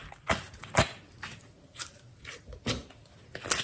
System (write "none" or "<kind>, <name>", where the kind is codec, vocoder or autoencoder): none